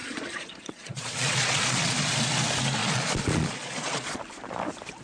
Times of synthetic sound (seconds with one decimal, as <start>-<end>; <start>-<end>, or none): 0.0-2.1; 2.8-4.2